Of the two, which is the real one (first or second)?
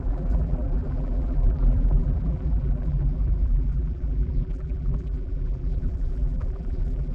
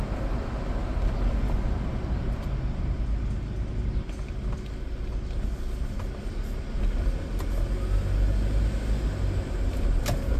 second